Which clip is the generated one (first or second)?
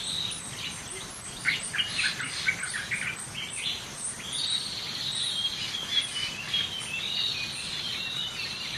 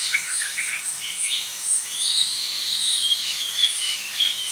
second